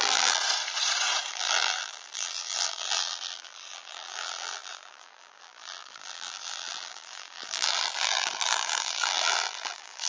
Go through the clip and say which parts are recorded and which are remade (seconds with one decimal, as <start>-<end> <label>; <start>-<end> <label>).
0.0-0.4 remade; 0.4-1.3 recorded; 1.3-10.1 remade